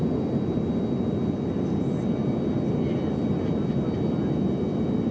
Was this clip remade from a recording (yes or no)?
no